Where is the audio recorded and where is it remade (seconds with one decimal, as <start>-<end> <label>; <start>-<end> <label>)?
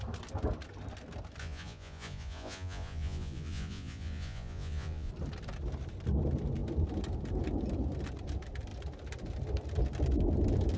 0.0-1.4 recorded; 1.4-5.1 remade; 5.1-10.8 recorded